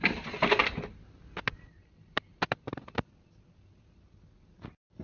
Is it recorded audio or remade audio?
recorded